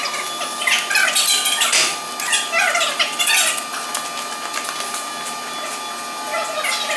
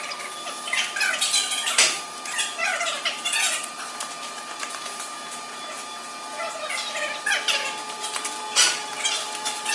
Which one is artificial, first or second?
second